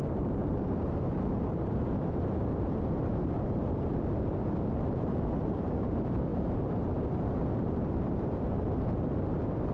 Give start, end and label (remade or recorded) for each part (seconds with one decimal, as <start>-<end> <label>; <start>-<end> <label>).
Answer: 0.0-9.7 remade